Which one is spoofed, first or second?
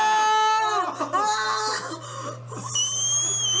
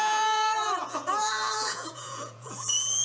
second